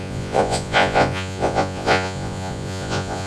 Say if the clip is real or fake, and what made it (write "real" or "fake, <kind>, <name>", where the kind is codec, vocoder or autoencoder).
fake, vocoder, Vocos